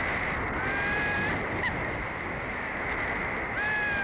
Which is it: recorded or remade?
recorded